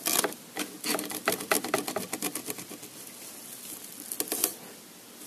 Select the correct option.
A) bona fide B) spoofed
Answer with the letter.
A